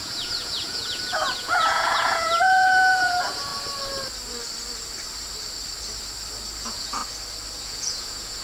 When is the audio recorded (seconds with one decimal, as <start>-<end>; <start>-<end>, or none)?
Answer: 3.5-6.6; 7.0-7.6